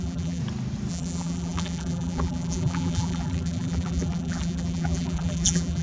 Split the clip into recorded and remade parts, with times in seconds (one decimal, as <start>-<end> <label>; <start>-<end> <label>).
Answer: 0.0-0.4 remade; 0.4-0.9 recorded; 0.9-5.8 remade